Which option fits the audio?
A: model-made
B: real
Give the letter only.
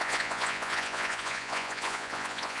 A